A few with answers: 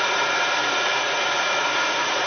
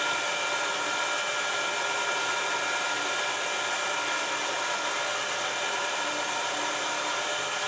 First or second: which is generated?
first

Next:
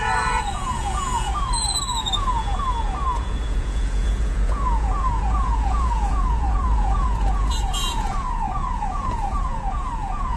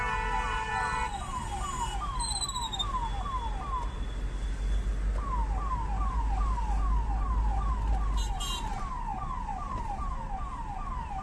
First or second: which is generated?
first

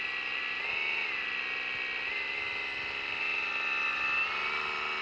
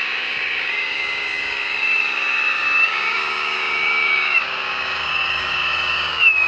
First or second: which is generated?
second